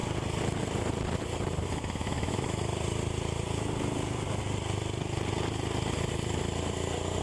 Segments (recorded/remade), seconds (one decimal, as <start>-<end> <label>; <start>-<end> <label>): 0.0-1.6 recorded; 1.6-2.7 remade; 2.7-7.2 recorded